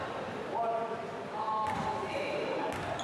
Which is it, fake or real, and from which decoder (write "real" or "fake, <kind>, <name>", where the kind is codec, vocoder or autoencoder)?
real